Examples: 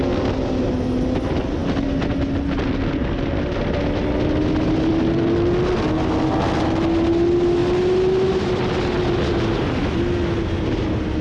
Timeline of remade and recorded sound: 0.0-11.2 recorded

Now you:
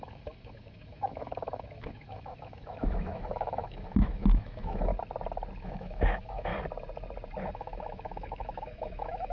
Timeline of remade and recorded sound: 0.0-4.9 remade; 4.9-5.6 recorded; 5.6-6.5 remade; 6.5-7.5 recorded; 7.5-9.3 remade